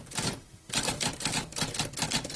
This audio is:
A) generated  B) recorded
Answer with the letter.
B